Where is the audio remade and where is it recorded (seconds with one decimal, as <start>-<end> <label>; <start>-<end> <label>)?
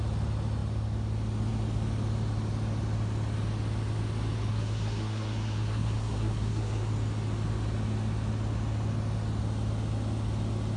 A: 0.0-4.5 recorded; 4.5-6.9 remade; 6.9-10.8 recorded